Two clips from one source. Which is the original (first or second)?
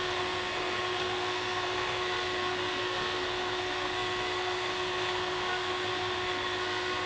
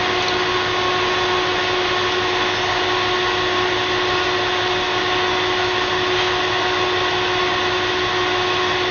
second